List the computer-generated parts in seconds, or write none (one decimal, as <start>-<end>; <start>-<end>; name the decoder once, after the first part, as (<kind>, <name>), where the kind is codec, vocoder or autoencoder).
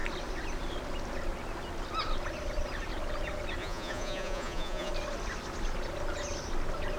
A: 3.6-4.9 (vocoder, Vocos)